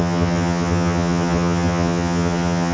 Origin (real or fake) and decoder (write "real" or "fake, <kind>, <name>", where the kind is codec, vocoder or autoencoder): fake, vocoder, HiFi-GAN